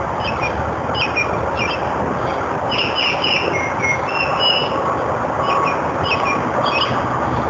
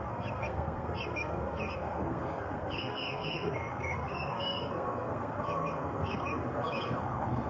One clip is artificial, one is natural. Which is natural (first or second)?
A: first